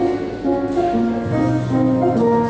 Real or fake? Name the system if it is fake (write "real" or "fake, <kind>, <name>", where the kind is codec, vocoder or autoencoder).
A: real